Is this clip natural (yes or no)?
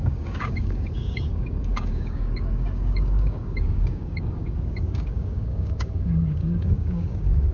no